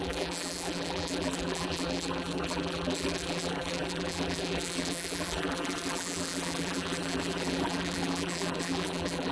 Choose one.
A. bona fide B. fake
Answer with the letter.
B